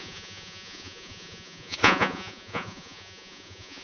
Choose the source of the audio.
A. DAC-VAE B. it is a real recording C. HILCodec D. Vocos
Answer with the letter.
D